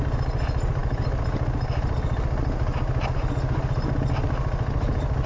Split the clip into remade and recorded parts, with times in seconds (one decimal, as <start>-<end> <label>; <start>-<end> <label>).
0.0-5.3 recorded